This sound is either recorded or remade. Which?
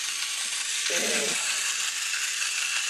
remade